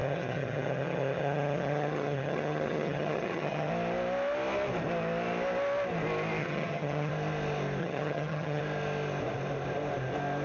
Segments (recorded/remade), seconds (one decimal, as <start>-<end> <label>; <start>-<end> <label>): 0.0-3.7 remade; 3.7-6.4 recorded; 6.4-7.1 remade; 7.1-7.8 recorded; 7.8-8.6 remade; 8.6-10.4 recorded